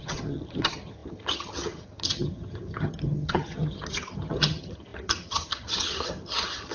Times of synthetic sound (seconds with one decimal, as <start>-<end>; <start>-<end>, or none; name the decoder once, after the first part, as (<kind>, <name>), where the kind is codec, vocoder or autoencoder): 0.0-6.7 (vocoder, HiFi-GAN)